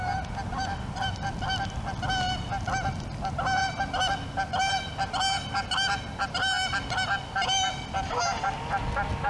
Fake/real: real